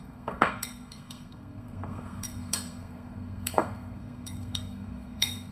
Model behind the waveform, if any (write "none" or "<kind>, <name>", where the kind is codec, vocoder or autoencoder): codec, SNAC